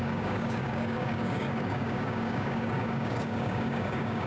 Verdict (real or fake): fake